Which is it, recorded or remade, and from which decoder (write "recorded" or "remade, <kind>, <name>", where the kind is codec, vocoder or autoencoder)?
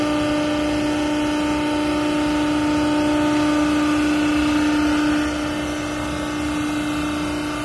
recorded